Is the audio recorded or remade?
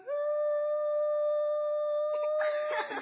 recorded